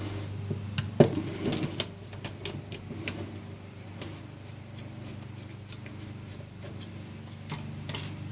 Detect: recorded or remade recorded